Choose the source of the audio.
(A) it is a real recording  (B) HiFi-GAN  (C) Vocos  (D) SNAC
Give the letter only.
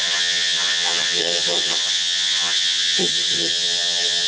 B